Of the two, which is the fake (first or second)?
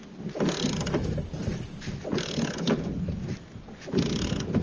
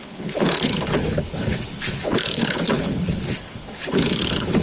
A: second